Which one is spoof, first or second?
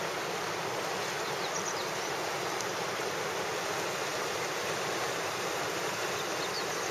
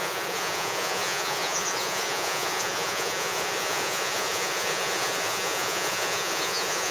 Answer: second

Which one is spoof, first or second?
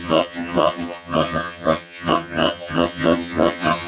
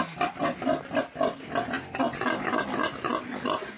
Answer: first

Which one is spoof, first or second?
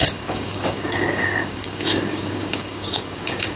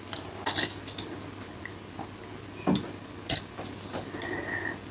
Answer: first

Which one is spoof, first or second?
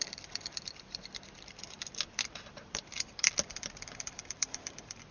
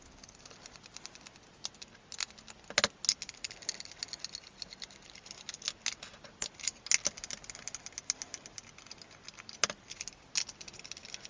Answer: first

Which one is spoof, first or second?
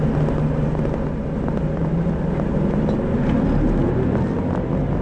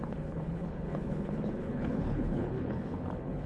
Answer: second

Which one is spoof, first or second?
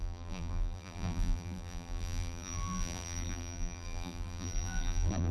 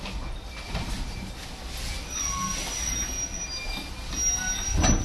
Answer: first